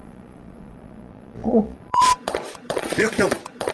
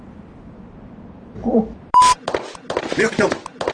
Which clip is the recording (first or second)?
second